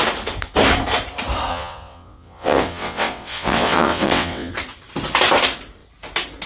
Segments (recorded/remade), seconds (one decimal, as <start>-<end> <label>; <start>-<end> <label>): 0.0-1.5 recorded; 1.5-4.5 remade; 4.5-6.5 recorded